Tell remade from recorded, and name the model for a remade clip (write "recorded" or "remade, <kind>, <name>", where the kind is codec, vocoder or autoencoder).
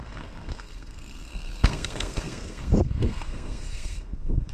remade, codec, SNAC